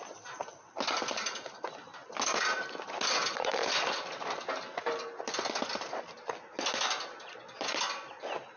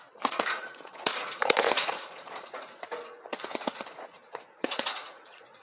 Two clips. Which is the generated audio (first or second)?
second